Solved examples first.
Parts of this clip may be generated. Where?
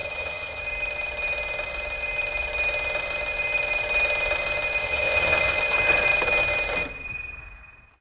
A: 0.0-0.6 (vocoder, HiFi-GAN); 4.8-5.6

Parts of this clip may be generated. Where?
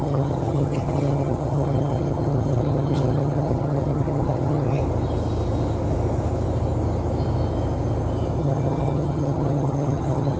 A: 0.0-4.8 (vocoder, HiFi-GAN); 8.4-10.4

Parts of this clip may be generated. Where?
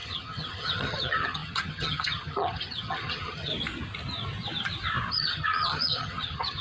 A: 0.0-3.5 (vocoder, HiFi-GAN); 5.1-6.6